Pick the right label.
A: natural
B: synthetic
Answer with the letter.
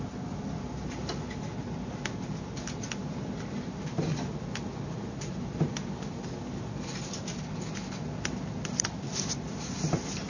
A